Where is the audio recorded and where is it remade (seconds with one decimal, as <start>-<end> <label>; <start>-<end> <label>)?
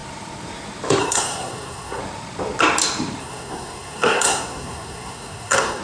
0.0-1.0 recorded; 1.0-2.0 remade; 2.0-3.2 recorded; 3.2-5.8 remade